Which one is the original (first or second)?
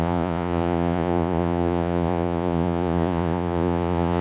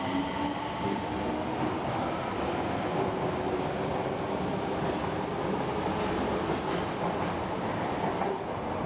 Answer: second